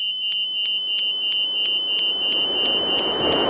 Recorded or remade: recorded